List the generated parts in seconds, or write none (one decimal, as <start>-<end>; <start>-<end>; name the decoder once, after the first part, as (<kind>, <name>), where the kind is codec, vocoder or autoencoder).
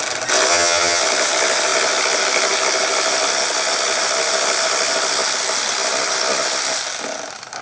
0.5-1.0 (vocoder, HiFi-GAN)